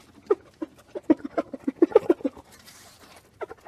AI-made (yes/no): no